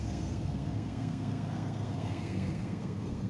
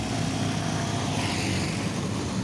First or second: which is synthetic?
first